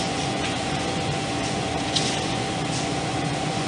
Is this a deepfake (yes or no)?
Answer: yes